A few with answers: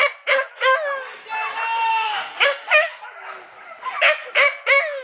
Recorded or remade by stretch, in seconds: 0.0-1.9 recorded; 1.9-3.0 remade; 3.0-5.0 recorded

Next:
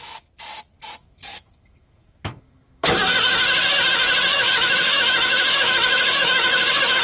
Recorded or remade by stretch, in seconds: 0.0-1.0 recorded; 1.0-3.0 remade; 3.0-4.3 recorded; 4.3-7.0 remade

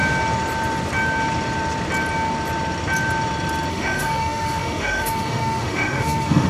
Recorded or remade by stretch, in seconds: 0.0-3.7 recorded; 3.7-6.5 remade

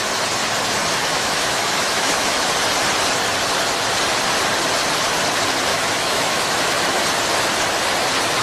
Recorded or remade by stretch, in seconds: 0.0-1.0 recorded; 1.0-2.5 remade; 2.5-5.7 recorded; 5.7-6.6 remade; 6.6-8.4 recorded

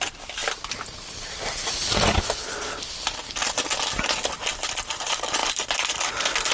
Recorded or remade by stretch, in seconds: 0.0-6.5 recorded

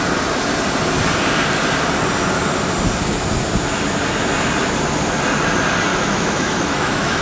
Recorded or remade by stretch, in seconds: 0.0-5.9 recorded; 5.9-7.2 remade